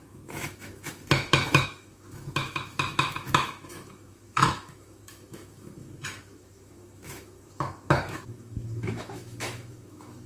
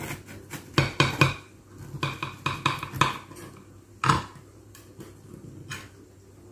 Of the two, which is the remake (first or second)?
first